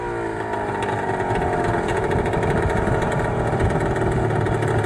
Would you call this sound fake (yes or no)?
no